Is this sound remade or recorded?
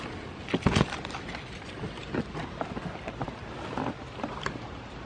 recorded